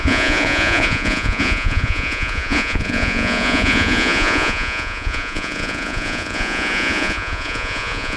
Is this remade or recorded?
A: remade